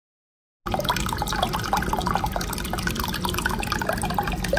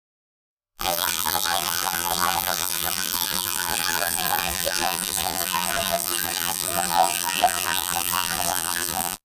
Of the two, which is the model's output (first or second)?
second